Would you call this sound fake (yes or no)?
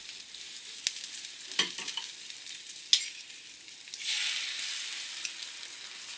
no